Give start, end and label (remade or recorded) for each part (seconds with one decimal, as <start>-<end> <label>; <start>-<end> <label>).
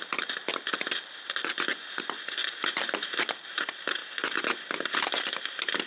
0.0-5.9 recorded